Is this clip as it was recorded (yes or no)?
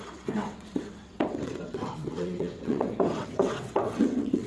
no